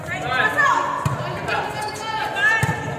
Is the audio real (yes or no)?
yes